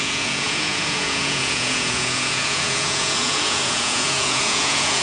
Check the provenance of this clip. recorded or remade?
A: remade